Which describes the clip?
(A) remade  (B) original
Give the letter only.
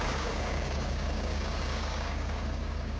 A